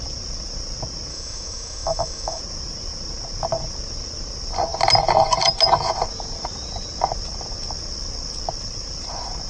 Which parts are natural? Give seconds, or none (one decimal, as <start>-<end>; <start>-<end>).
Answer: 0.0-1.1; 2.4-9.5